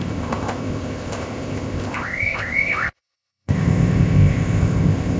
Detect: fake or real fake